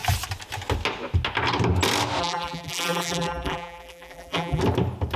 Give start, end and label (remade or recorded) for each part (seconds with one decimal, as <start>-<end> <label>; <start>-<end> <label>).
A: 0.0-2.2 recorded; 2.2-4.6 remade; 4.6-5.2 recorded